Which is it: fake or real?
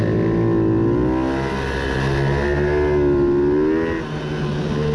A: real